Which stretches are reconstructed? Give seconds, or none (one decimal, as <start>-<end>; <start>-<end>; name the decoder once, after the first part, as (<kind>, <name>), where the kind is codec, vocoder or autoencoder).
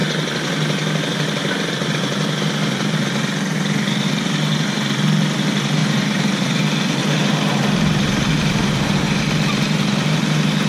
5.8-6.5 (vocoder, BigVGAN v2); 7.0-9.2